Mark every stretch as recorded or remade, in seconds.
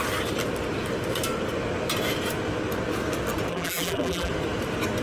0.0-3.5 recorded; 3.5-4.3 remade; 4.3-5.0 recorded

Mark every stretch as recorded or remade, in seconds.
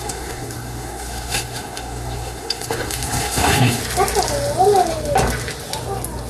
0.0-3.8 remade; 3.8-6.3 recorded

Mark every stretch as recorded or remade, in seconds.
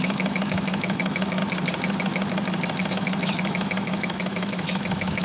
0.0-1.4 remade; 1.4-2.9 recorded; 2.9-5.2 remade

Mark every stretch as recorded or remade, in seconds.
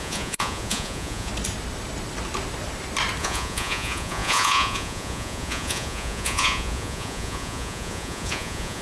0.0-1.3 remade; 1.3-3.2 recorded; 3.2-8.8 remade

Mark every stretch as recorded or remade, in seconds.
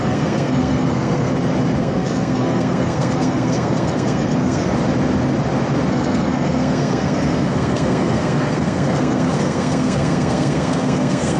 0.0-1.3 remade; 1.3-1.8 recorded; 1.8-4.7 remade; 4.7-5.9 recorded; 5.9-11.4 remade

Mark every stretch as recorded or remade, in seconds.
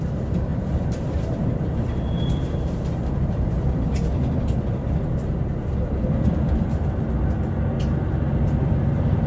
0.0-0.5 recorded; 0.5-3.5 remade; 3.5-9.3 recorded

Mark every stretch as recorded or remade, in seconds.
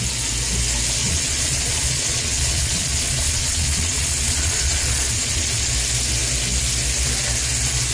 0.0-1.0 recorded; 1.0-5.7 remade; 5.7-7.9 recorded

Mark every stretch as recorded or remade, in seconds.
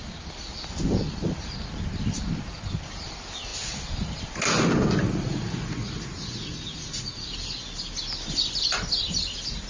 0.0-5.0 recorded; 5.0-7.3 remade; 7.3-9.7 recorded